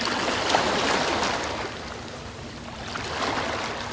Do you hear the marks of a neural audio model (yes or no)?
no